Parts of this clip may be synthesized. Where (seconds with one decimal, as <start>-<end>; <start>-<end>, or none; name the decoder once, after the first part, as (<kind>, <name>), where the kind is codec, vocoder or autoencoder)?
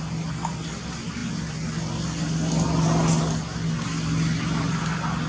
none